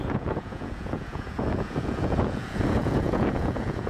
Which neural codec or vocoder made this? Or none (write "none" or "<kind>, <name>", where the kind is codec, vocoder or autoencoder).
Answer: vocoder, Vocos